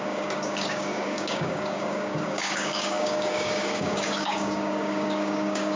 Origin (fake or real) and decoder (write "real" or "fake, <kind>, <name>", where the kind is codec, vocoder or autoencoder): fake, codec, DAC